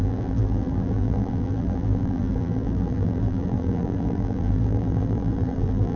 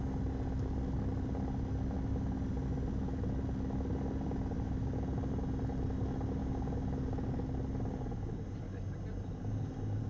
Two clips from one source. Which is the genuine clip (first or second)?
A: second